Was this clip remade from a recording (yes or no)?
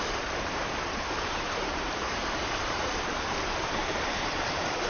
yes